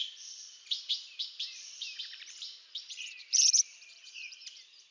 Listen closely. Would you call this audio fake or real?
fake